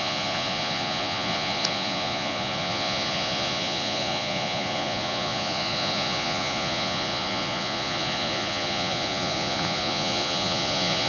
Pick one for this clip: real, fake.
fake